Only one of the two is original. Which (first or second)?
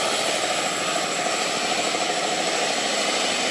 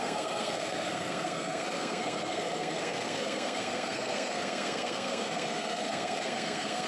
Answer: first